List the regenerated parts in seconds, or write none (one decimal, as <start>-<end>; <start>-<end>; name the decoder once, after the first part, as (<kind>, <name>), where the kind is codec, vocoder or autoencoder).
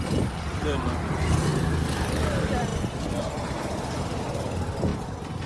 none